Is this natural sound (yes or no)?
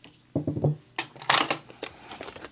yes